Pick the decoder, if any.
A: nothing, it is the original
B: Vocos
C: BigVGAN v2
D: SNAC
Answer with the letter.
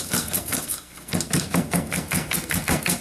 D